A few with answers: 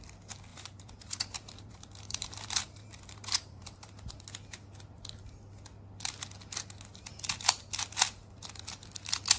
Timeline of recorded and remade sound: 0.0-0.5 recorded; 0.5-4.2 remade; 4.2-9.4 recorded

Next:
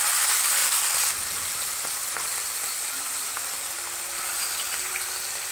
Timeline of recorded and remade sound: 0.0-0.6 recorded; 0.6-1.1 remade; 1.1-2.0 recorded; 2.0-3.3 remade; 3.3-5.5 recorded

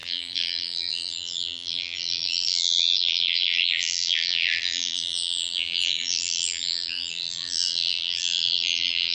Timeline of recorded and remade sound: 0.0-9.1 remade

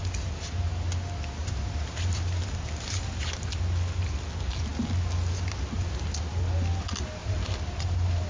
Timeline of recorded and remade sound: 0.0-1.4 recorded; 1.4-3.4 remade; 3.4-7.2 recorded; 7.2-8.3 remade